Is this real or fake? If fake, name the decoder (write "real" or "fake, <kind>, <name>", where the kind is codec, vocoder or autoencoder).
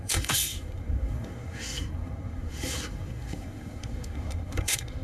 fake, codec, SNAC